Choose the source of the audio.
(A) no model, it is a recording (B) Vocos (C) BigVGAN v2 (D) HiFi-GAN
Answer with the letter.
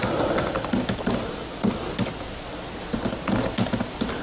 A